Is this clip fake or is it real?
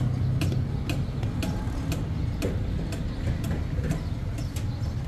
real